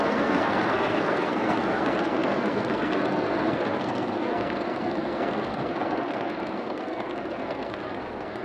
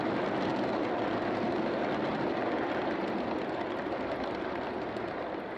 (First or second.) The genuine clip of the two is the second